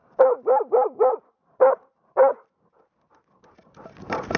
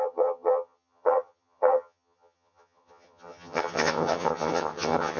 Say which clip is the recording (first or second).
first